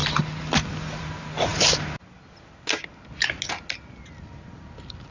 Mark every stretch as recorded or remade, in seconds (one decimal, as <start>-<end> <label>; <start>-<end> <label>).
0.0-5.1 recorded